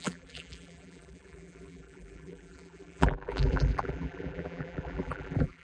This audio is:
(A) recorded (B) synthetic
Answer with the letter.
B